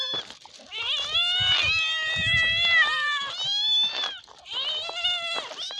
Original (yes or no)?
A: yes